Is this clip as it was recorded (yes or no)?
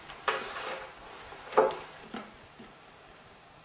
no